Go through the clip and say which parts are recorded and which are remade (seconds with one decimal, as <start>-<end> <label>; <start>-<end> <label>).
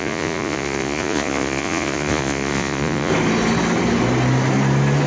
0.0-3.1 remade; 3.1-5.1 recorded